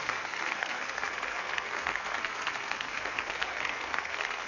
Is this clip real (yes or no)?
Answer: no